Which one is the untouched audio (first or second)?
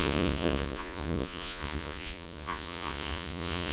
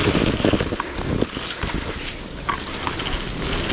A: second